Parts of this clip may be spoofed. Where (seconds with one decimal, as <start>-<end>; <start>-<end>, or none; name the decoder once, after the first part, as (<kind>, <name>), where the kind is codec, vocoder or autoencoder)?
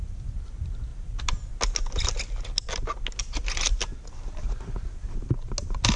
none